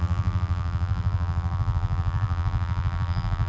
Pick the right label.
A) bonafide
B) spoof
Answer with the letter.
B